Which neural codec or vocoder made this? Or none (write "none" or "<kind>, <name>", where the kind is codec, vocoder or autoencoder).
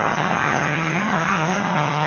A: vocoder, HiFi-GAN